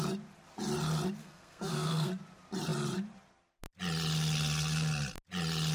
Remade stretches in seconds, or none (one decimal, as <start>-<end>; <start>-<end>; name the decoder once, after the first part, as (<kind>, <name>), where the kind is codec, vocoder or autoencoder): 1.2-2.1 (codec, SNAC)